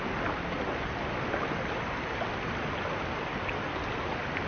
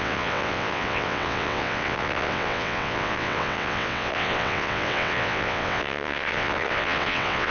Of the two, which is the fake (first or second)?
second